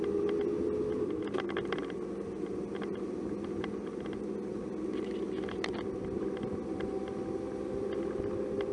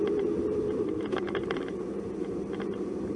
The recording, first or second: first